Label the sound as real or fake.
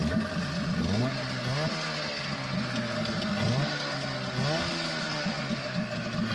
real